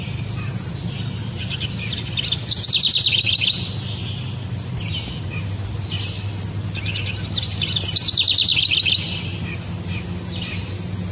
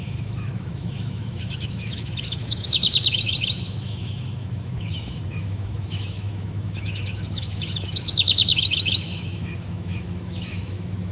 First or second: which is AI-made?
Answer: second